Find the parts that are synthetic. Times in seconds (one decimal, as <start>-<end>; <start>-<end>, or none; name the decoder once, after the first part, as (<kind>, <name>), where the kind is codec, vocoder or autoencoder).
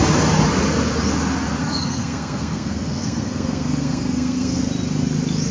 1.6-4.6 (codec, SNAC)